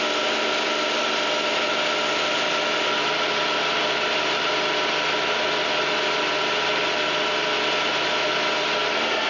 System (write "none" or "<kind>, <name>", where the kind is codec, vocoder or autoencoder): none